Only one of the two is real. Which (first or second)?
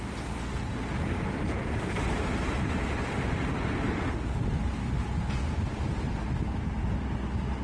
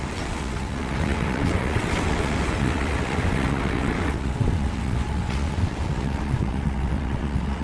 first